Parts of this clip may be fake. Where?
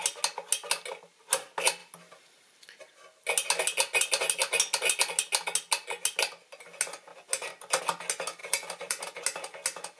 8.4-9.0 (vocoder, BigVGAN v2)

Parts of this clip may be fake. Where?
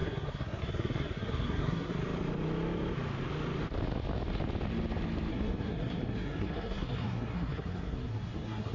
0.0-1.9 (codec, SNAC); 5.3-8.7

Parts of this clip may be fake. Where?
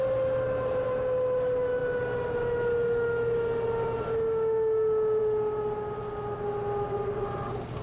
none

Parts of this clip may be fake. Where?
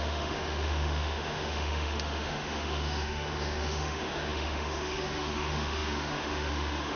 0.0-7.0 (autoencoder, DAC-VAE)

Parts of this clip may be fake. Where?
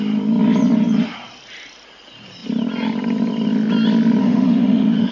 4.2-5.1 (autoencoder, DAC-VAE)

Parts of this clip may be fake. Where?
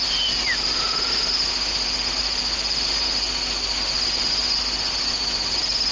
none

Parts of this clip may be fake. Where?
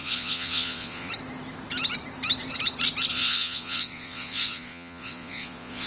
0.0-1.1 (vocoder, Vocos); 3.1-5.9